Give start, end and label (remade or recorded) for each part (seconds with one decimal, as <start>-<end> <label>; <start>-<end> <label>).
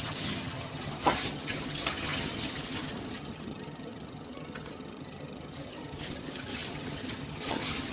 0.0-7.9 remade